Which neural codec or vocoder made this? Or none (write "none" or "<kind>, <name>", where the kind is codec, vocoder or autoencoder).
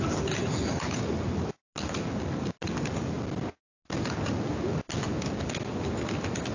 none